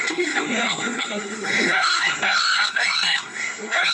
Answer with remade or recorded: remade